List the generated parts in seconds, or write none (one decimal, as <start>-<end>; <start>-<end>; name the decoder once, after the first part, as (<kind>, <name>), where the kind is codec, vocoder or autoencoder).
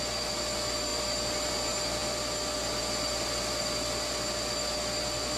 none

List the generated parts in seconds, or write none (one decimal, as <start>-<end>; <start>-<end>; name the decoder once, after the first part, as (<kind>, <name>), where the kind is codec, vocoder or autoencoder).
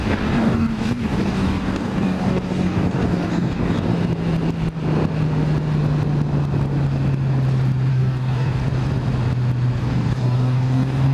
0.0-3.9 (codec, DAC); 7.9-8.6; 9.8-11.1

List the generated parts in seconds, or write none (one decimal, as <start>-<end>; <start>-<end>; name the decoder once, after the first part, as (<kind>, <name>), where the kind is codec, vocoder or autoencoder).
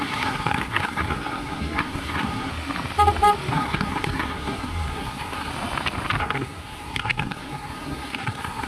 0.0-2.5 (codec, SNAC); 3.5-5.5; 6.2-8.7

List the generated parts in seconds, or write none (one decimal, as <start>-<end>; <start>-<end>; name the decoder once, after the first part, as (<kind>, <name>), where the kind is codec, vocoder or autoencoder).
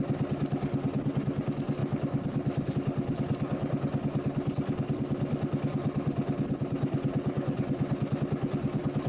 1.8-2.7 (autoencoder, DAC-VAE)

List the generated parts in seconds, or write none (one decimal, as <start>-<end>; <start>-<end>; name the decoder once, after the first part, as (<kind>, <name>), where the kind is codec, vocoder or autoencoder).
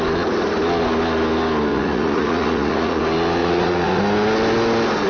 1.7-3.0 (vocoder, Vocos); 3.4-4.0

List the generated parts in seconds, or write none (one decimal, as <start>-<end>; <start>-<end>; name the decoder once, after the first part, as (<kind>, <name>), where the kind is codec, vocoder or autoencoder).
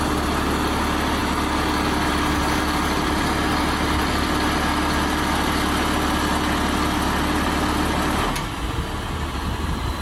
none